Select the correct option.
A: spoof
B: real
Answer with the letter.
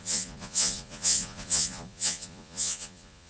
A